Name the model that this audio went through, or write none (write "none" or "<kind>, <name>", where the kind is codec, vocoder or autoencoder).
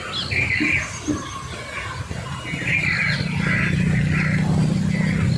none